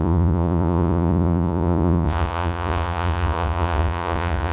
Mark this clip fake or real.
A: fake